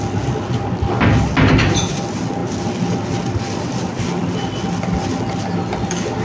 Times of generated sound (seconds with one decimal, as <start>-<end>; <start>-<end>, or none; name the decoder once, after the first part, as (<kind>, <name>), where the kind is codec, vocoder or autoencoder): none